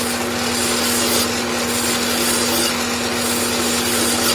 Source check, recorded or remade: recorded